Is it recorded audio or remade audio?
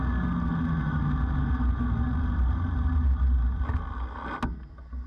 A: recorded